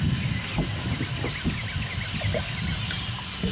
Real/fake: real